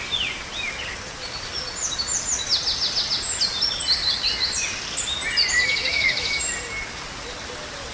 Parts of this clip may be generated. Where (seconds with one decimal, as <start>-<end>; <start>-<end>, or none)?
5.6-6.4